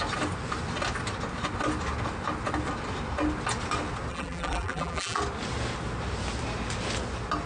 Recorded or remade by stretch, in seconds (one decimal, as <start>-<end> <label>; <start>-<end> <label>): 0.0-4.1 recorded; 4.1-5.2 remade; 5.2-7.5 recorded